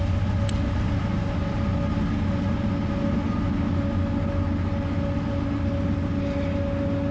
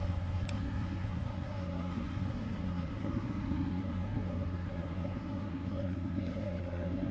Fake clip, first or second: second